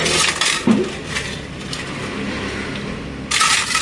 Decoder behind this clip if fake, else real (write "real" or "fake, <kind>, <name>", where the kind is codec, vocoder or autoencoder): real